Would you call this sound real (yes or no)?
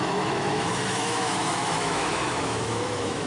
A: no